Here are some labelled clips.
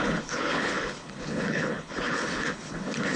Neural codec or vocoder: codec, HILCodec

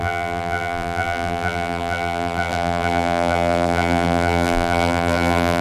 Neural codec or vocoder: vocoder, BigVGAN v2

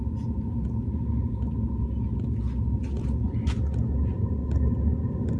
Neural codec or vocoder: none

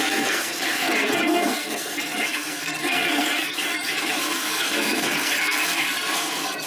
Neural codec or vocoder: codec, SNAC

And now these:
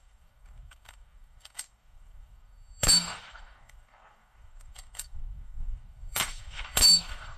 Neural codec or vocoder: codec, DAC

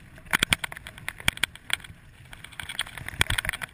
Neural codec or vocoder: none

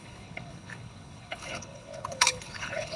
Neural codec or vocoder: codec, HILCodec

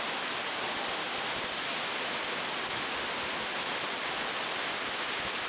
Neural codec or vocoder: none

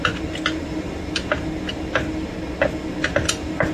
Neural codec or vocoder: none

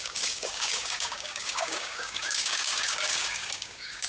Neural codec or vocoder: codec, DAC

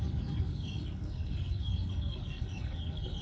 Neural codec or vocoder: codec, SNAC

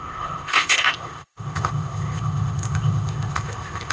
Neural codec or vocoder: codec, ZipCodec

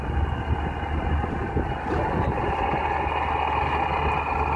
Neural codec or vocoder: none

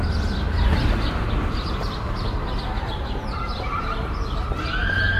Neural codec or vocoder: none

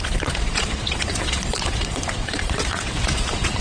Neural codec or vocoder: vocoder, Vocos